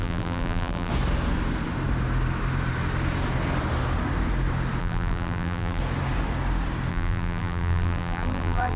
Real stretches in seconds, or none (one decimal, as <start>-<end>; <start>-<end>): 0.9-4.8; 5.8-6.9